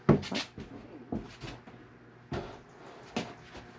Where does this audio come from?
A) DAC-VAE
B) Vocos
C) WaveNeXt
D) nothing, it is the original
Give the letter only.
D